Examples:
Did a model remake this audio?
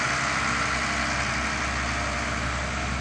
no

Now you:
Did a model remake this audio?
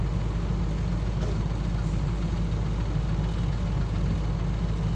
no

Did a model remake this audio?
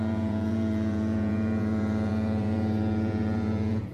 yes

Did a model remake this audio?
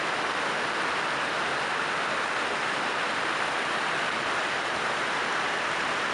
no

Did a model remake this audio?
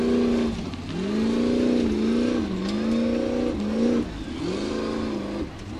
no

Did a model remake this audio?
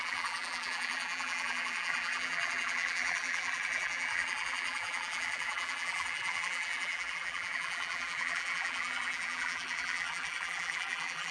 yes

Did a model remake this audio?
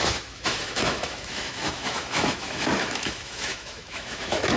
yes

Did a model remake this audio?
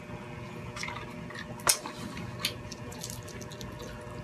no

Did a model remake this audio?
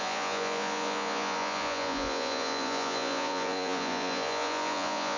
yes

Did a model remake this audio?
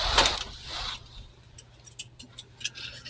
no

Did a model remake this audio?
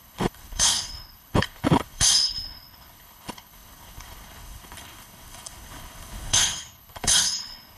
yes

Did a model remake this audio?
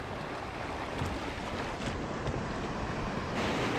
no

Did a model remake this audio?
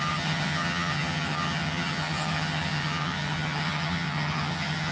yes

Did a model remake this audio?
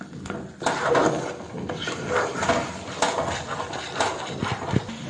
no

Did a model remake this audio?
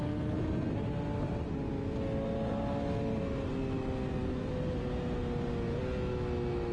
no